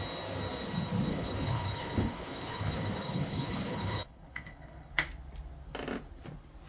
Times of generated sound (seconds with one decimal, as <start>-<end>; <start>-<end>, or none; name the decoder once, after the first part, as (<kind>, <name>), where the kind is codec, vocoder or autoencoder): 1.1-4.9 (codec, HILCodec)